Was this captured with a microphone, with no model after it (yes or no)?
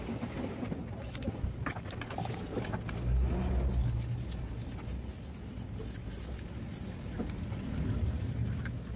yes